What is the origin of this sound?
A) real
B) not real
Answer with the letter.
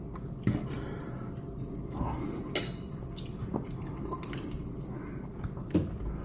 A